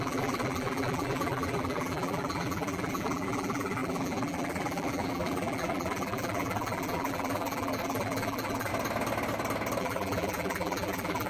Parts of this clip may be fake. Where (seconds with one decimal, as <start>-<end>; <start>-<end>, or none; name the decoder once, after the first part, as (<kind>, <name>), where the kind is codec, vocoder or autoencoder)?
0.0-8.7 (vocoder, BigVGAN v2); 9.8-11.3